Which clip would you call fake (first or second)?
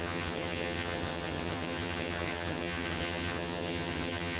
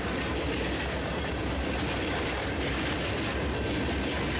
first